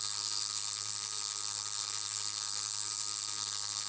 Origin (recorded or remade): remade